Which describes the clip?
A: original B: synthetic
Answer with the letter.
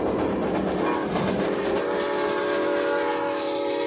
A